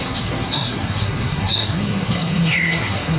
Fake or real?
fake